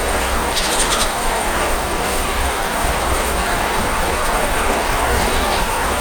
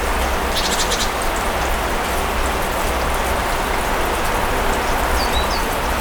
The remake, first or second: first